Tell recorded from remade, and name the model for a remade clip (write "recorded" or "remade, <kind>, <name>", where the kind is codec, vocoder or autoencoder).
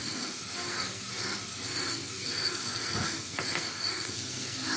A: remade, codec, SNAC